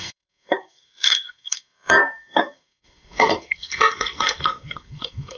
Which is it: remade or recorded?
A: remade